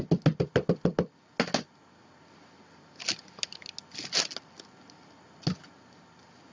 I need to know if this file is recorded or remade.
recorded